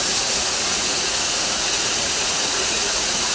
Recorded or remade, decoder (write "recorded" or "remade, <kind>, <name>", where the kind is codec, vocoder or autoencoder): remade, vocoder, Vocos